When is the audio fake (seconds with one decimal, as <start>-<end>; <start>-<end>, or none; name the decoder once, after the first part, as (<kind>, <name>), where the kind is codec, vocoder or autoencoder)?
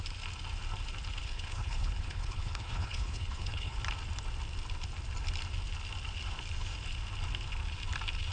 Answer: 1.2-3.8 (codec, HILCodec)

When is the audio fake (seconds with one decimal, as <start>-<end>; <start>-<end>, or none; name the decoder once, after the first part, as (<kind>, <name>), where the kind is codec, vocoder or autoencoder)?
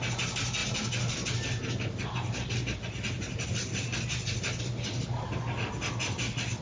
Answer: none